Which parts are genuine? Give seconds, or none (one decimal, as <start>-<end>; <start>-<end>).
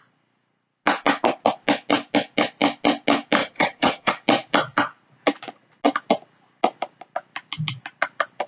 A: 0.0-3.4; 4.1-8.5